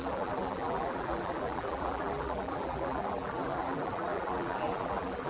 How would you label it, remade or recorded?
remade